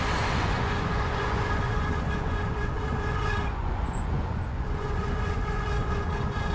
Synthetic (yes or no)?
yes